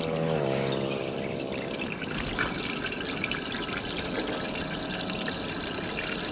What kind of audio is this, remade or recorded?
recorded